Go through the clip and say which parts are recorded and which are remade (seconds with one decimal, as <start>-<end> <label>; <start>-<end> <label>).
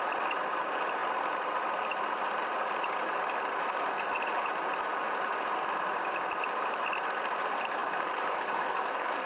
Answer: 0.0-7.8 recorded; 7.8-9.3 remade